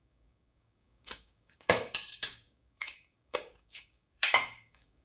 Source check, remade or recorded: remade